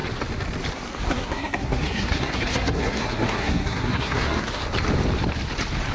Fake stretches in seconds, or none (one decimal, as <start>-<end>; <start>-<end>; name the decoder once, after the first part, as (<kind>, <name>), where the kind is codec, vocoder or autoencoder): 1.1-4.6 (codec, SNAC)